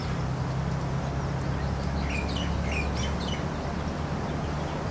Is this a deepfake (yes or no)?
no